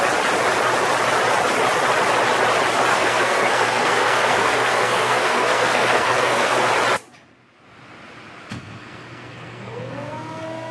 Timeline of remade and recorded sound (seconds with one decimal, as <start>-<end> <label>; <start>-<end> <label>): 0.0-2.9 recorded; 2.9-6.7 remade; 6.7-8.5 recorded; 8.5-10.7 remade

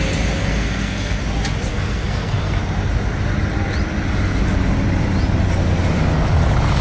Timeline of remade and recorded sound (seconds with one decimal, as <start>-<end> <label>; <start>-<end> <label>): 0.0-0.4 recorded; 0.4-1.2 remade; 1.2-1.7 recorded; 1.7-2.6 remade; 2.6-6.8 recorded

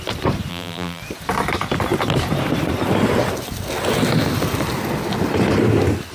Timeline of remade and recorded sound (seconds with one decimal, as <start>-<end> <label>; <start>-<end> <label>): 0.0-0.5 recorded; 0.5-1.0 remade; 1.0-6.1 recorded

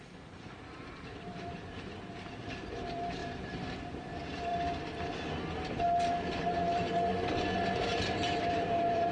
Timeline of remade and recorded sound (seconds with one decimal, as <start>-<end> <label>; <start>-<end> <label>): 0.0-4.5 remade; 4.5-6.4 recorded; 6.4-7.1 remade; 7.1-8.5 recorded; 8.5-9.1 remade